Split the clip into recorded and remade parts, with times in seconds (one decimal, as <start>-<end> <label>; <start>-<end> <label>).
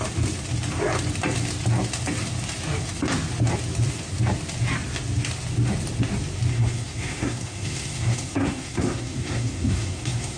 0.0-6.5 recorded; 6.5-10.4 remade